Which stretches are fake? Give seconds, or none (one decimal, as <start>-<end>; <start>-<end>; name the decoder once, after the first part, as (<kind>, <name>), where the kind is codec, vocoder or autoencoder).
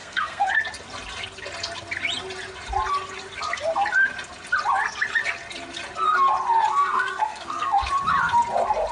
0.0-0.5 (codec, SNAC); 6.7-7.8